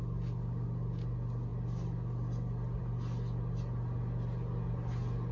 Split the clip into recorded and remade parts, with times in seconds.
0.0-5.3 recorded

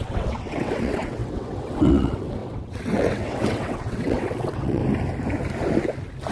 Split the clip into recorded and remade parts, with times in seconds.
0.0-4.8 remade; 4.8-6.3 recorded

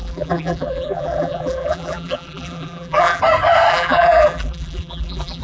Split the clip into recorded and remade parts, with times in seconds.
0.0-3.2 remade; 3.2-3.7 recorded; 3.7-5.4 remade

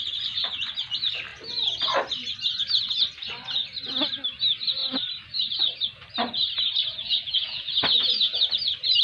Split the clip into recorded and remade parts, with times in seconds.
0.0-6.9 recorded; 6.9-7.7 remade; 7.7-9.0 recorded

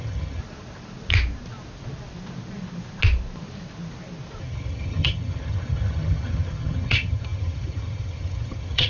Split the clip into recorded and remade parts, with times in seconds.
0.0-0.4 remade; 0.4-4.4 recorded; 4.4-8.9 remade

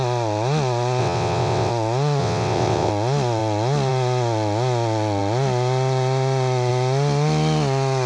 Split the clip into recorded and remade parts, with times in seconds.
0.0-1.0 recorded; 1.0-1.7 remade; 1.7-2.2 recorded; 2.2-2.9 remade; 2.9-8.1 recorded

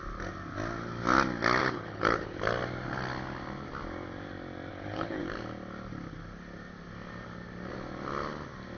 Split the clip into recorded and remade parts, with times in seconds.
0.0-1.6 recorded; 1.6-2.4 remade; 2.4-4.7 recorded; 4.7-5.2 remade; 5.2-8.8 recorded